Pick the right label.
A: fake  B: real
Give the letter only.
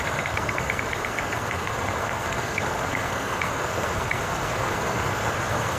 A